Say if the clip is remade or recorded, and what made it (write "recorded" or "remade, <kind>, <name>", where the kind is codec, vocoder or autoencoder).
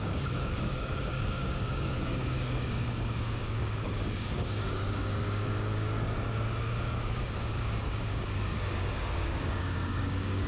remade, codec, DAC